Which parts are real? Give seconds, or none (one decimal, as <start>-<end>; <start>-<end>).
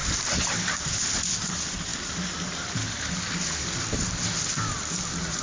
0.0-5.4